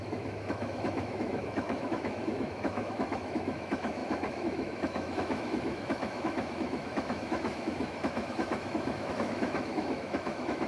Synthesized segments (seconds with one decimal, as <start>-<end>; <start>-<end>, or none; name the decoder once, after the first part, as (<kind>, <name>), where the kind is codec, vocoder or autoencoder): 0.0-10.7 (autoencoder, DAC-VAE)